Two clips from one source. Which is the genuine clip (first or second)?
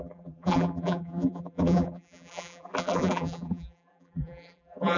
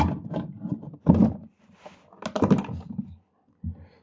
second